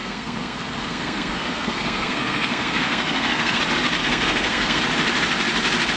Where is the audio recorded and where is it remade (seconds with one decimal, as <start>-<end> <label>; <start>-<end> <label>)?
0.0-3.6 remade; 3.6-4.0 recorded; 4.0-4.8 remade; 4.8-6.0 recorded